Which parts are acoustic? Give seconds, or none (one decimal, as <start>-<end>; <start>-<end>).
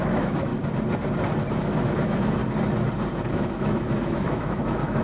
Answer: 0.5-1.5; 2.4-3.3